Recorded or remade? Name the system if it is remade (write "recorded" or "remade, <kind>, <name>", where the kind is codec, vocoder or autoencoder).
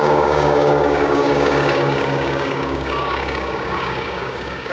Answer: remade, codec, DAC